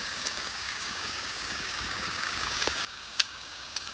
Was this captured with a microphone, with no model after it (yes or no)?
no